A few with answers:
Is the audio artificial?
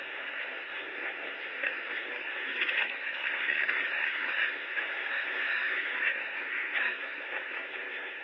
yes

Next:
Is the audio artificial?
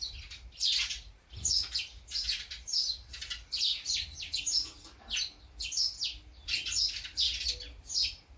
no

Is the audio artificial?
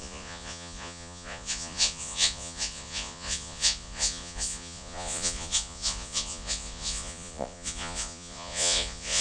yes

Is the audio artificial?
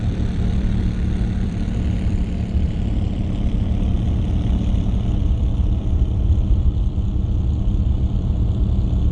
yes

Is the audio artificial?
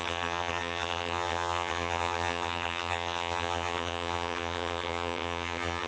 yes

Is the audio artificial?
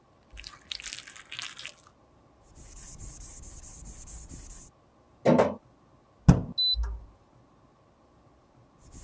no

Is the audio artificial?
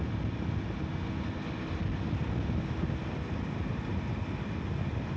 no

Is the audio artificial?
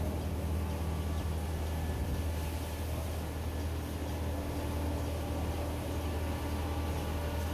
no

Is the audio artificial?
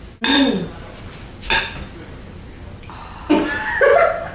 no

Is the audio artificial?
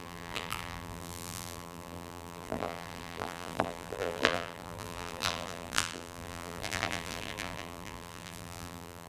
yes